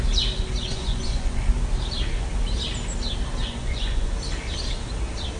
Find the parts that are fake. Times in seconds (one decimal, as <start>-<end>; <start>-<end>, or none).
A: 0.7-1.4; 3.4-4.1